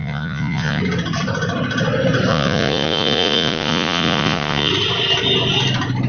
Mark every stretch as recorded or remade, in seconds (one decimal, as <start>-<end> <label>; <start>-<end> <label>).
0.0-0.8 remade; 0.8-2.3 recorded; 2.3-4.7 remade; 4.7-6.1 recorded